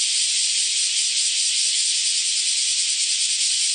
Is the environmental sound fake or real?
real